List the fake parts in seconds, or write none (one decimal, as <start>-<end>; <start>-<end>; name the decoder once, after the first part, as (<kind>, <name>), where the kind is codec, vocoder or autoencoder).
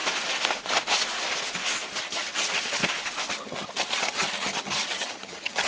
2.0-2.8 (vocoder, HiFi-GAN); 3.3-5.7